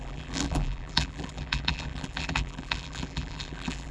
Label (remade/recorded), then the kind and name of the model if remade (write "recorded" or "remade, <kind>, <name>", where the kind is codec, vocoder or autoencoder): remade, vocoder, BigVGAN v2